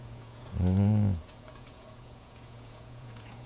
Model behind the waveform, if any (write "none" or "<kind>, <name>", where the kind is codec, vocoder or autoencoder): vocoder, Vocos